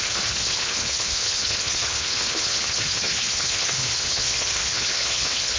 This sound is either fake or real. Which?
fake